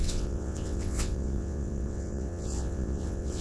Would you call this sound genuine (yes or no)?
no